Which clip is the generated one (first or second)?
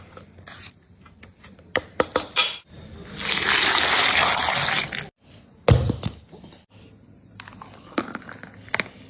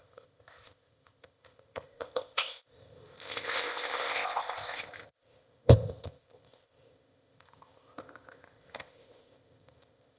second